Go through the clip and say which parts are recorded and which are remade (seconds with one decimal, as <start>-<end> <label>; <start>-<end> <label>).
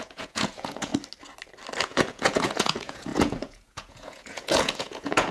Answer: 0.0-0.9 remade; 0.9-1.8 recorded; 1.8-5.3 remade